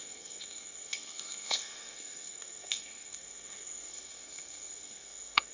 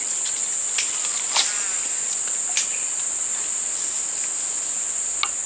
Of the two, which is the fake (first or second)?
first